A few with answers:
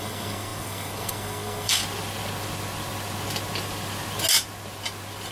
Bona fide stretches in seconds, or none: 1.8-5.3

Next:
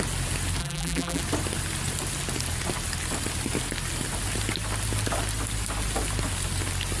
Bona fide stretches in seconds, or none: 0.0-0.6; 1.2-7.0

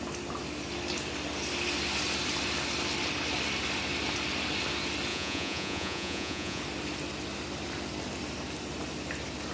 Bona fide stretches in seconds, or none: 0.0-5.1; 6.6-9.5

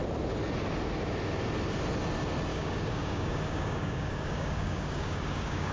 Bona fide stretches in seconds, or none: 0.0-2.5